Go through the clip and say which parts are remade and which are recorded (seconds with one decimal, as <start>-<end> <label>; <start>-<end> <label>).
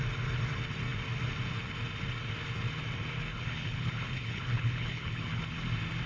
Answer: 0.0-3.3 recorded; 3.3-5.4 remade; 5.4-6.1 recorded